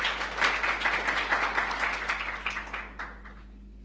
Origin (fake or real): real